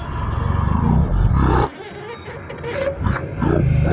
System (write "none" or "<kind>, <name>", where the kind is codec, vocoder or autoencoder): none